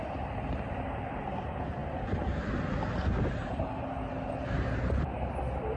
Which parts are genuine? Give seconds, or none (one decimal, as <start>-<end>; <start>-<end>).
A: 0.0-5.8